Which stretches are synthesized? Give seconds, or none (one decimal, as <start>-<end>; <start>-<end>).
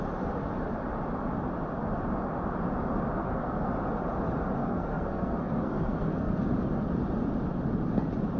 3.2-3.7; 4.6-6.4